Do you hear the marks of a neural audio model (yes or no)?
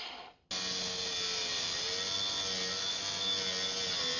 no